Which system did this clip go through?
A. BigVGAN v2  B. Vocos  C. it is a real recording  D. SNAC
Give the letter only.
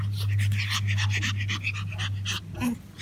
C